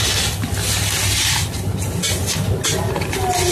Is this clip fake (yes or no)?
no